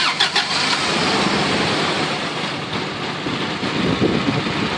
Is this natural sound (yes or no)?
yes